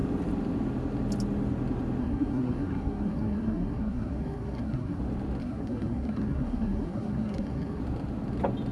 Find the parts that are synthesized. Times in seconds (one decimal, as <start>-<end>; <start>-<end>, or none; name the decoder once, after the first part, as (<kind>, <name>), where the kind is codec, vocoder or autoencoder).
2.0-5.0 (codec, SNAC); 5.4-7.8